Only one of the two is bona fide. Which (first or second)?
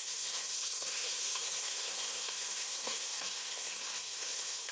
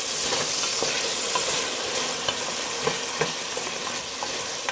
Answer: second